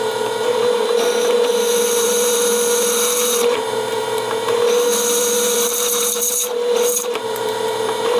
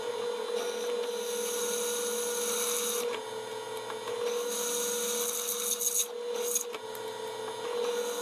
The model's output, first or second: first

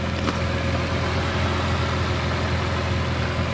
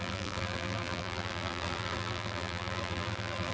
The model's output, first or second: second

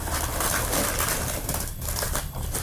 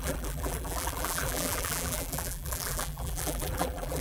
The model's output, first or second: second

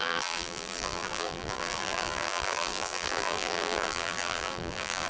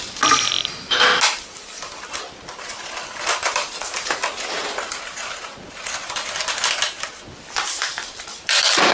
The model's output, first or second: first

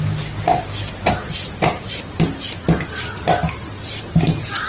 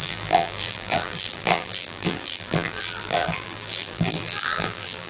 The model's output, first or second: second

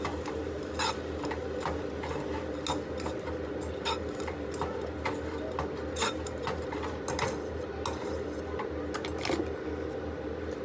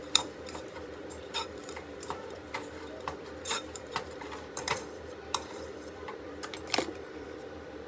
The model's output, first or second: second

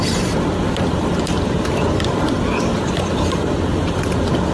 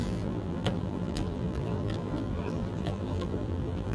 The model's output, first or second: second